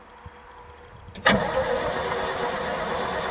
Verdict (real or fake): real